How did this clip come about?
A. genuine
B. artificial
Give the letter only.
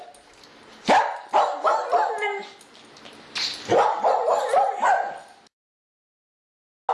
A